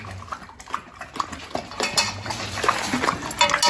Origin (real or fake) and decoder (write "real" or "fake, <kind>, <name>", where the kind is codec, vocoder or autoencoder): real